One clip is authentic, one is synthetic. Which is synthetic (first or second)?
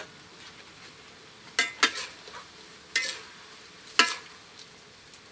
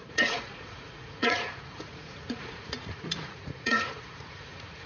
second